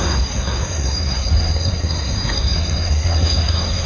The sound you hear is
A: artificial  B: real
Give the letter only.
A